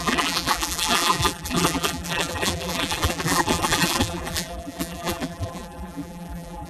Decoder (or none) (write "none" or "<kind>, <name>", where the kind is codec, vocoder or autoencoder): vocoder, BigVGAN v2